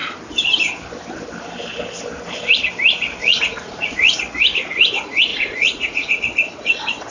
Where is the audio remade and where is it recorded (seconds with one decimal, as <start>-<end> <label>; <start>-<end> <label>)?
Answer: 0.0-3.2 recorded; 3.2-4.2 remade; 4.2-5.3 recorded; 5.3-6.2 remade; 6.2-7.1 recorded